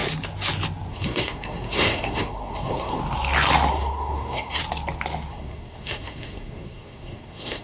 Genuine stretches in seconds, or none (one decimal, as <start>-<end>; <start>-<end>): 0.0-0.9; 3.0-3.7; 4.6-5.3